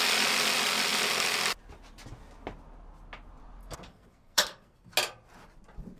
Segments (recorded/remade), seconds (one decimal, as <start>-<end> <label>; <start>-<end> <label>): 0.0-3.6 recorded; 3.6-4.9 remade; 4.9-6.0 recorded